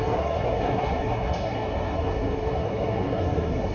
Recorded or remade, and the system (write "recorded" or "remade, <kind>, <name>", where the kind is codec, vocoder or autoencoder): remade, codec, SNAC